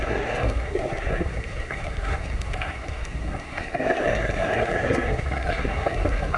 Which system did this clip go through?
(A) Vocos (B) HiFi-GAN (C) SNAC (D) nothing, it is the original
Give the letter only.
C